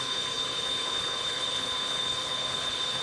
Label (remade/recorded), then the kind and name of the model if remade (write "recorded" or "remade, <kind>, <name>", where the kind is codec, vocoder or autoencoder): remade, codec, HILCodec